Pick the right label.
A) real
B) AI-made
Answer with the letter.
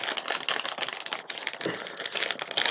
A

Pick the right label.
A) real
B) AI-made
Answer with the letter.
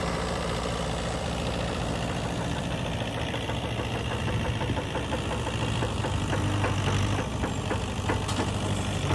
B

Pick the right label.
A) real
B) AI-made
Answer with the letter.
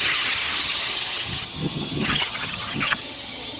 B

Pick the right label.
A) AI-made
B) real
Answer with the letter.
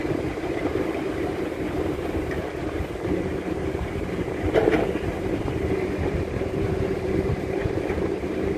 A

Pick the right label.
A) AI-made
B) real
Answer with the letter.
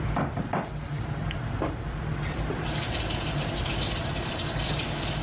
A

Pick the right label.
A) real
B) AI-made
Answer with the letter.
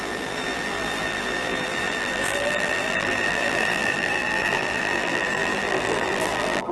B